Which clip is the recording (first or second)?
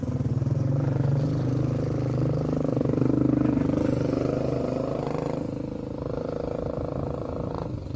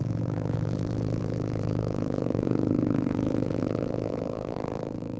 first